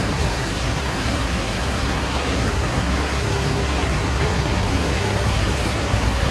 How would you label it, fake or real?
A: fake